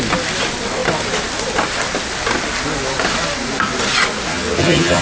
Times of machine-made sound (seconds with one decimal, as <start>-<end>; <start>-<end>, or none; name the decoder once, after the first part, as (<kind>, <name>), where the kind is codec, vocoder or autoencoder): 4.3-5.0 (vocoder, HiFi-GAN)